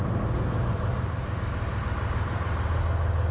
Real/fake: real